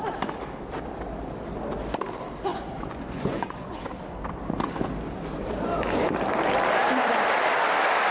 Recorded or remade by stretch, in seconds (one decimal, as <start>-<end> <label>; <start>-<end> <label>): 0.0-2.5 recorded; 2.5-3.8 remade; 3.8-8.1 recorded